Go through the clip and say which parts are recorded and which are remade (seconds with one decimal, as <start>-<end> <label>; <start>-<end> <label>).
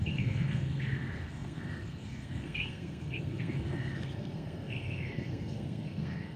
0.0-6.4 remade